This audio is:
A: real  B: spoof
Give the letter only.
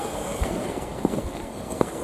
B